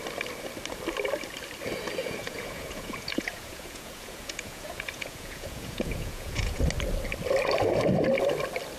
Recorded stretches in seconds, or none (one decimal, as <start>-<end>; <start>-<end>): 0.0-2.0; 6.6-8.8